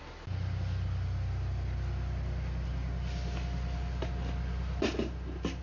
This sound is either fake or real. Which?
real